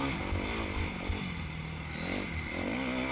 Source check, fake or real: real